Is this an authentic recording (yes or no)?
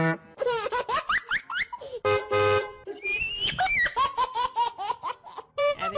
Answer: no